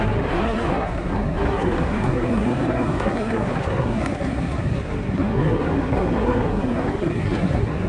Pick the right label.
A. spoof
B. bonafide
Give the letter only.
A